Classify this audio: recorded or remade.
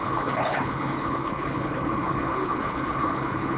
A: remade